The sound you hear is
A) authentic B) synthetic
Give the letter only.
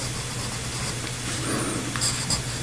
A